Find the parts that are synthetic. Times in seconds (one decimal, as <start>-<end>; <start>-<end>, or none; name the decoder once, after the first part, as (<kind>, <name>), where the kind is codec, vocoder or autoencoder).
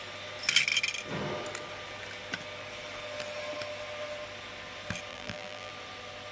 5.1-5.7 (vocoder, BigVGAN v2)